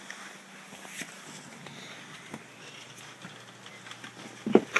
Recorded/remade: recorded